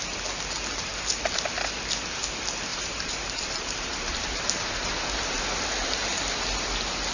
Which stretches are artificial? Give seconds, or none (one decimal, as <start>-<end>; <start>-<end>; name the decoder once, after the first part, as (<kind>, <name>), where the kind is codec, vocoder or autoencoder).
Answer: 2.7-6.2 (vocoder, BigVGAN v2)

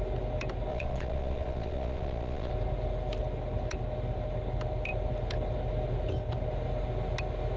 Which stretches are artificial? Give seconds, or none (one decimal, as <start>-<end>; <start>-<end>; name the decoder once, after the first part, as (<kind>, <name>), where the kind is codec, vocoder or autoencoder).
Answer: 0.7-2.5 (vocoder, Vocos)

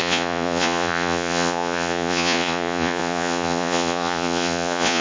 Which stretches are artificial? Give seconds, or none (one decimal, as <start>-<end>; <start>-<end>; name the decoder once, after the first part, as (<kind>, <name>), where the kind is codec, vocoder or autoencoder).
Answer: 0.0-5.0 (vocoder, Vocos)

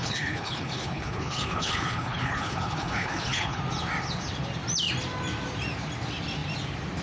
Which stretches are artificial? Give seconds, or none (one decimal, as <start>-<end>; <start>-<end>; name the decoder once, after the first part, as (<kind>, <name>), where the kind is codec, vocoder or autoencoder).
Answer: 0.0-3.6 (codec, HILCodec)

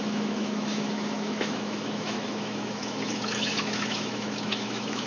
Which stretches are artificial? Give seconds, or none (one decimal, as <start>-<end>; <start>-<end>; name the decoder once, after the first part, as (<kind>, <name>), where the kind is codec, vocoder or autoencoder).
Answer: 0.0-5.1 (autoencoder, DAC-VAE)

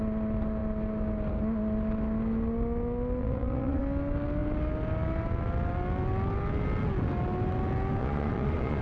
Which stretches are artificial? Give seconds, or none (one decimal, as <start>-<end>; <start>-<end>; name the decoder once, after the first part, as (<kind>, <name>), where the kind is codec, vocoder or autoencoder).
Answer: 3.2-3.8 (vocoder, Vocos); 8.0-8.8